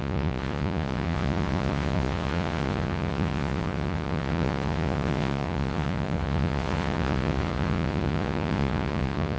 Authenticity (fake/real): fake